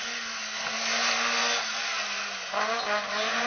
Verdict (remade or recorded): recorded